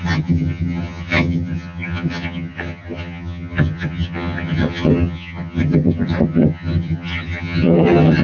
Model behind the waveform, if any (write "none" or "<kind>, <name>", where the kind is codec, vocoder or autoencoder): vocoder, HiFi-GAN